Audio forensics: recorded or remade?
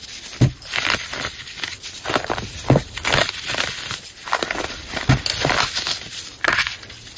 recorded